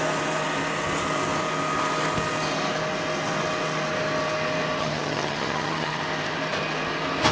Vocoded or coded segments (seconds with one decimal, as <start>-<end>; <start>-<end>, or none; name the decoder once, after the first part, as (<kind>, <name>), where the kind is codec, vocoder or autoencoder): 4.8-6.0 (vocoder, HiFi-GAN)